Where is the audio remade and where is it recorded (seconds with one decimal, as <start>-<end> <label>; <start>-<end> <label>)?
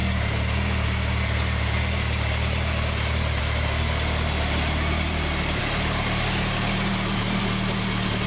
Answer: 0.0-8.3 recorded